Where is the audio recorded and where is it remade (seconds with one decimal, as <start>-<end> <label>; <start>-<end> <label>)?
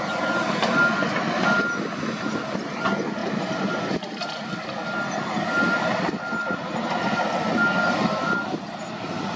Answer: 0.0-9.4 recorded